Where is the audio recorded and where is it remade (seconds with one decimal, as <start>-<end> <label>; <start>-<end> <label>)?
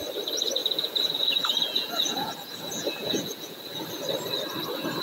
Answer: 0.0-0.6 recorded; 0.6-3.6 remade; 3.6-5.0 recorded